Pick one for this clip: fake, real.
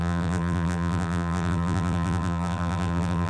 fake